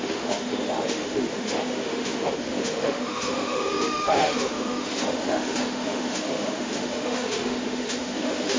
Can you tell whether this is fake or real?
fake